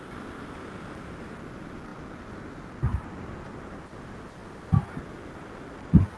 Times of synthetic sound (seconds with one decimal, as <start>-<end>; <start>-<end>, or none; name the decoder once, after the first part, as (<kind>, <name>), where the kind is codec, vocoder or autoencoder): none